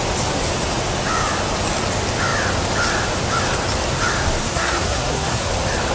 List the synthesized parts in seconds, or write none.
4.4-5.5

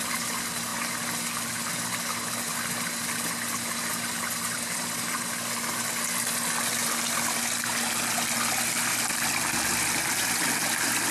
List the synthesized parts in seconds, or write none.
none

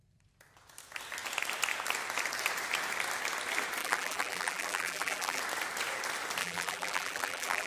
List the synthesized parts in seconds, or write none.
3.8-5.4; 6.4-7.7

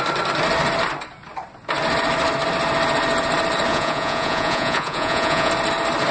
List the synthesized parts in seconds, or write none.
3.7-5.5

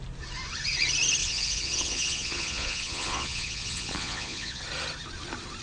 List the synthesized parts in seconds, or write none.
1.2-4.6

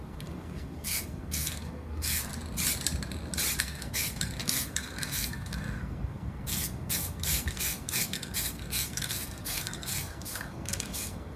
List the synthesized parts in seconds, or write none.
0.0-2.3; 3.6-11.4

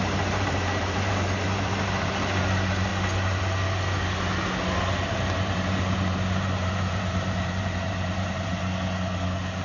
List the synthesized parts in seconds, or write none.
0.0-2.9; 5.2-8.5